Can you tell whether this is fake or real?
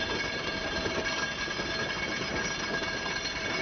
fake